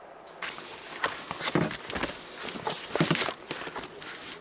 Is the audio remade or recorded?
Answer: recorded